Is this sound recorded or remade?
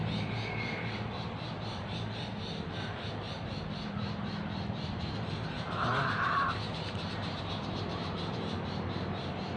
remade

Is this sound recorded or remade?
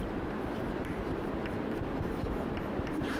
remade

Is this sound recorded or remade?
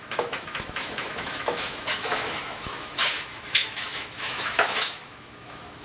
remade